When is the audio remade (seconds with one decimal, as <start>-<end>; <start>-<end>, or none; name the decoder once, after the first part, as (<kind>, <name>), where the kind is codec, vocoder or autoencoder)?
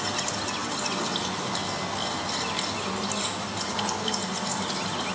none